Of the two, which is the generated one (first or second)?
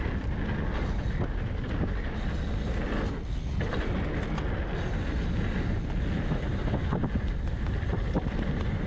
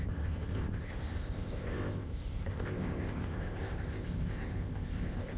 second